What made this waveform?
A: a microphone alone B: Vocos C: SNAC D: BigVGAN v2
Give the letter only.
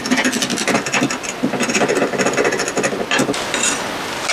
A